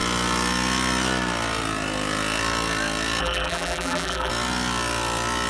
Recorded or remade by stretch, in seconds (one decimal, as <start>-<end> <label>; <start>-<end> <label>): 0.0-3.2 recorded; 3.2-4.3 remade; 4.3-5.5 recorded